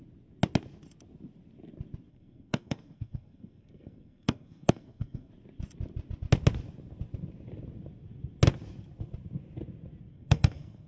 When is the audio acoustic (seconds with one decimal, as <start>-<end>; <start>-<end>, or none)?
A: 0.0-2.1; 5.3-10.1

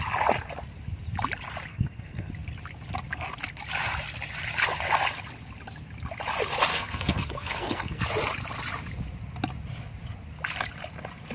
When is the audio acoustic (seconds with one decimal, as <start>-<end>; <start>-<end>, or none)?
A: 0.0-1.7; 2.3-6.7; 8.0-11.3

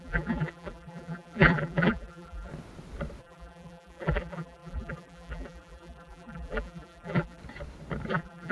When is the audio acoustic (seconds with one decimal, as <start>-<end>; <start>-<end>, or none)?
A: 2.5-3.2; 7.4-8.1